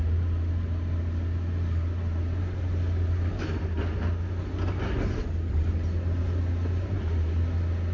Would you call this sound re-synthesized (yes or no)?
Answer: no